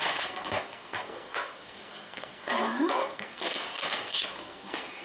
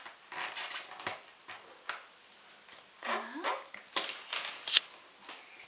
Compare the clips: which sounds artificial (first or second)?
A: first